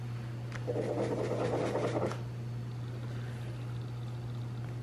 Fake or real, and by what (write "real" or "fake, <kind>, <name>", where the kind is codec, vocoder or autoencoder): real